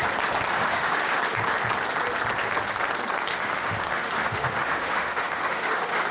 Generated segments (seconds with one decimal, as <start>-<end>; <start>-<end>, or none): 0.5-1.2; 3.3-6.1